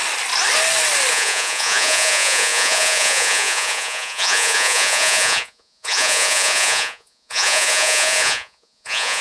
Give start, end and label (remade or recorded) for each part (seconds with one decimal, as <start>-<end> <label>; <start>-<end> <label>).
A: 0.0-1.1 recorded; 1.1-9.2 remade